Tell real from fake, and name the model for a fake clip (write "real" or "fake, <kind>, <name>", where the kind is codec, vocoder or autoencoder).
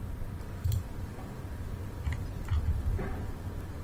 fake, vocoder, BigVGAN v2